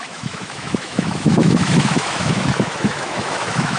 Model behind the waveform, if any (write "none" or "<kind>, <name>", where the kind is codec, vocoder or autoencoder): autoencoder, DAC-VAE